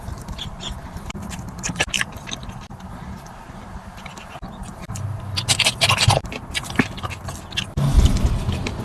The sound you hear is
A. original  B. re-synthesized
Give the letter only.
A